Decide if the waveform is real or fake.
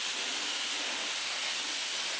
real